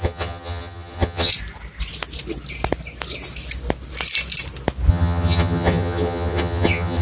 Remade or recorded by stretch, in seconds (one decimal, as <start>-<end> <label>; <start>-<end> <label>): 0.0-1.3 remade; 1.3-4.9 recorded; 4.9-7.0 remade